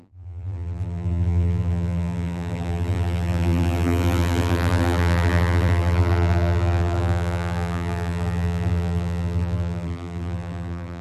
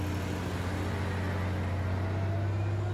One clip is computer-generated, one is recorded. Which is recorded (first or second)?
second